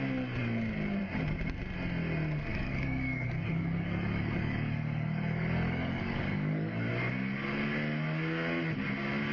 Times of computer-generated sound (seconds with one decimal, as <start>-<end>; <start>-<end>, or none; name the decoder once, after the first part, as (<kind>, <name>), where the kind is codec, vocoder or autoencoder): 2.5-6.9 (codec, DAC)